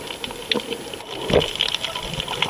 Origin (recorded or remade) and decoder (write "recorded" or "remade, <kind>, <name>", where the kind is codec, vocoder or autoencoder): recorded